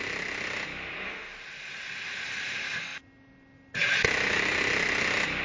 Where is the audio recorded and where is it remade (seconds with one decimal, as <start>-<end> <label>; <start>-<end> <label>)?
0.0-5.4 recorded

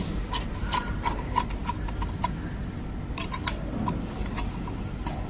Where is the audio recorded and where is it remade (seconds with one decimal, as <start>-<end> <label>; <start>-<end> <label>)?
0.0-5.3 recorded

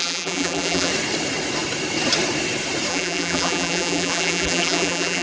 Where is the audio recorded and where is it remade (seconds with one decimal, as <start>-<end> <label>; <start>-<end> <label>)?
0.0-0.9 remade; 0.9-2.9 recorded; 2.9-5.2 remade

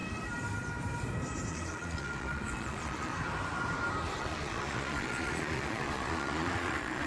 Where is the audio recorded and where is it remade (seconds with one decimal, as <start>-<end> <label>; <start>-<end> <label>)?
0.0-1.5 recorded; 1.5-3.1 remade; 3.1-4.2 recorded; 4.2-7.1 remade

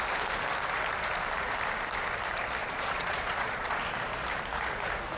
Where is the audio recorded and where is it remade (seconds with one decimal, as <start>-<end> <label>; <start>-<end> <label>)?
0.0-2.6 recorded; 2.6-3.8 remade; 3.8-5.2 recorded

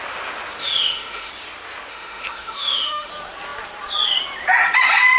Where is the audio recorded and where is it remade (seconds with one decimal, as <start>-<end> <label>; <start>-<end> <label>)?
0.0-0.6 recorded; 0.6-1.3 remade; 1.3-1.9 recorded; 1.9-3.1 remade; 3.1-5.2 recorded

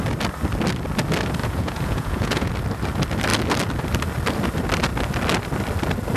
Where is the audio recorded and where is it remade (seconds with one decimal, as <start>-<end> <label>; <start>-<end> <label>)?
0.0-1.4 recorded; 1.4-2.5 remade; 2.5-6.2 recorded